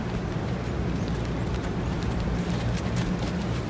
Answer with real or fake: real